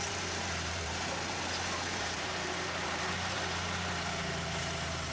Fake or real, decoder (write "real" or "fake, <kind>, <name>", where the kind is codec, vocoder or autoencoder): fake, vocoder, BigVGAN v2